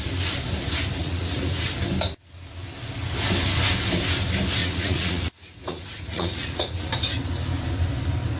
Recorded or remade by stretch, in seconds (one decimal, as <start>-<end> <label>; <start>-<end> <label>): 0.0-1.0 recorded; 1.0-1.7 remade; 1.7-4.6 recorded; 4.6-6.9 remade; 6.9-8.4 recorded